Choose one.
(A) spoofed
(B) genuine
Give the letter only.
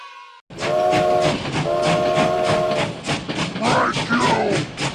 B